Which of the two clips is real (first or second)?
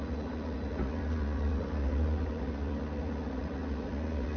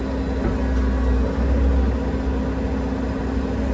second